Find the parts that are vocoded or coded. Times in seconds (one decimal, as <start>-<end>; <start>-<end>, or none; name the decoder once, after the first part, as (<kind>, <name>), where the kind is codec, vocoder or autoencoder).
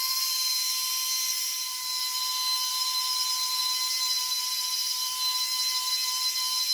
none